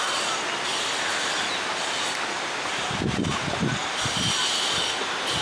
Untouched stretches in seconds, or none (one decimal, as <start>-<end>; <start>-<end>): 0.0-5.4